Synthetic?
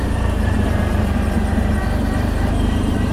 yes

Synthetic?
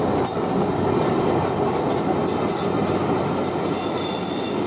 no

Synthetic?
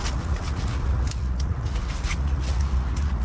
yes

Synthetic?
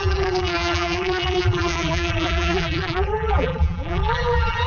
yes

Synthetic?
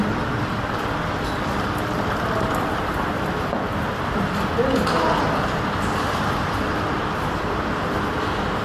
no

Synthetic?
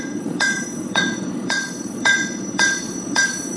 yes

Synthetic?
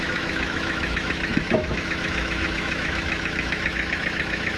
yes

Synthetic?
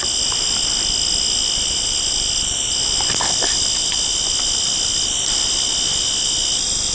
no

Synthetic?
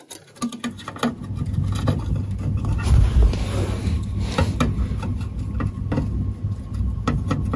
no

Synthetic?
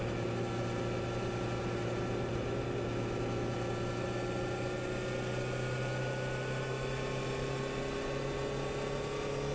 no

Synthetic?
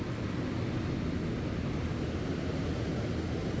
no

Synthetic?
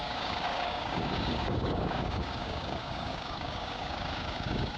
yes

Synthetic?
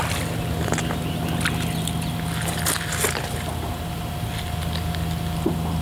no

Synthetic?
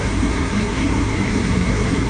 yes